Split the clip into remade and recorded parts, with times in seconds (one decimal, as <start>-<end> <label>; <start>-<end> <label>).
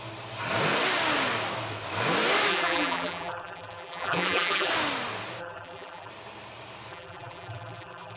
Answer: 0.0-2.5 recorded; 2.5-4.7 remade; 4.7-5.4 recorded; 5.4-6.1 remade; 6.1-6.9 recorded; 6.9-8.2 remade